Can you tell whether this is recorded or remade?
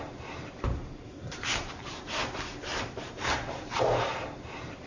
remade